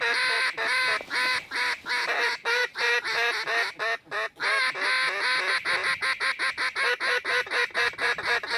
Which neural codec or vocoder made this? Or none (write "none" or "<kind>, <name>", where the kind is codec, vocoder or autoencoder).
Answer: none